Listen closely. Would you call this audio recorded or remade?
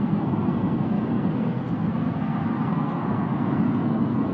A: remade